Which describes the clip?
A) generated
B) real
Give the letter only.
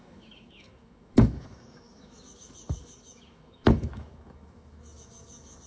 A